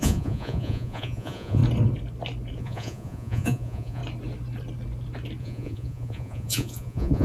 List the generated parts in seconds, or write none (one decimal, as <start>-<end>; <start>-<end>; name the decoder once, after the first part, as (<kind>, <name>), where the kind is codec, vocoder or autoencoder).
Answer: 0.0-1.6 (vocoder, Vocos); 2.6-4.0; 5.4-7.2